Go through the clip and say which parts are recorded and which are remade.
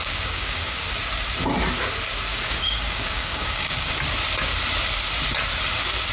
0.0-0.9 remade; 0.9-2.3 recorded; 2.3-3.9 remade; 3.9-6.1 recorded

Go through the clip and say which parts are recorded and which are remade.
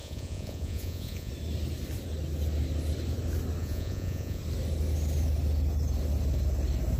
0.0-1.3 remade; 1.3-3.6 recorded; 3.6-4.4 remade; 4.4-7.0 recorded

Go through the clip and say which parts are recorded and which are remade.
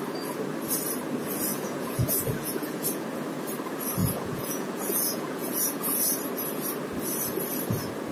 0.0-1.5 recorded; 1.5-3.0 remade; 3.0-4.0 recorded; 4.0-6.0 remade; 6.0-8.1 recorded